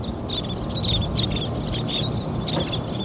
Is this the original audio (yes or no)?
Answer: yes